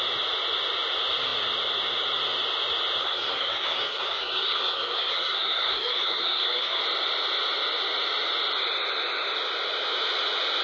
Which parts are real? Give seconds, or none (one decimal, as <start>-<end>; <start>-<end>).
0.0-3.0; 6.8-10.6